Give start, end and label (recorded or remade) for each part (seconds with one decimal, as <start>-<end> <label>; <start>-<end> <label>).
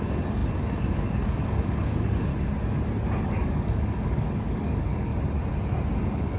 0.0-2.3 remade; 2.3-3.3 recorded; 3.3-5.1 remade; 5.1-6.0 recorded; 6.0-6.4 remade